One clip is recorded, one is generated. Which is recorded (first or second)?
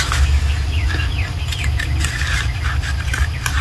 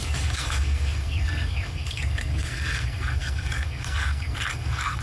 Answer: first